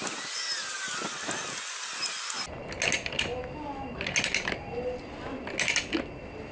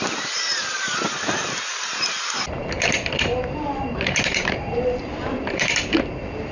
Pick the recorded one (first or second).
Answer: first